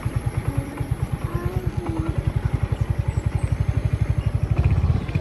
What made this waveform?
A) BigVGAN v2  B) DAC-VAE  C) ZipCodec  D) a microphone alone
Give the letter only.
D